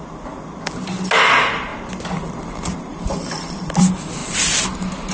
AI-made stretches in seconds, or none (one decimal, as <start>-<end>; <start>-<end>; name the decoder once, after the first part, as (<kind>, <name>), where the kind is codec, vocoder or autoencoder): 2.9-3.8 (vocoder, BigVGAN v2)